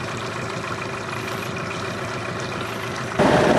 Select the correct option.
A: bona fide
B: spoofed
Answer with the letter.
A